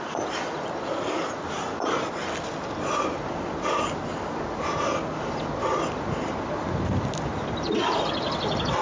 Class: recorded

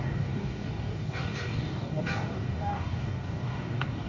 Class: remade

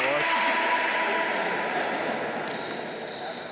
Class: recorded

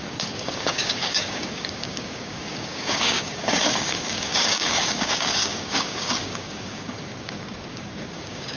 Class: remade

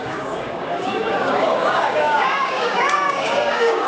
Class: remade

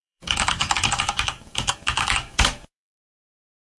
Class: remade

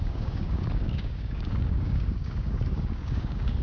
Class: remade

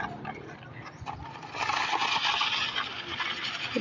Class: recorded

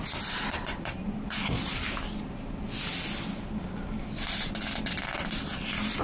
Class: recorded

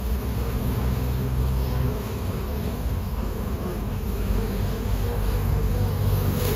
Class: remade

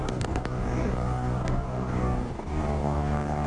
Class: remade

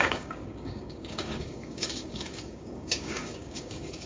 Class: remade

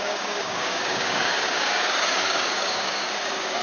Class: remade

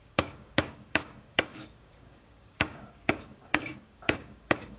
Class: remade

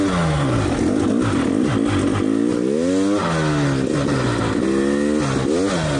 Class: recorded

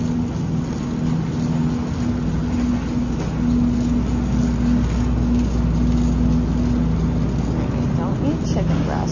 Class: recorded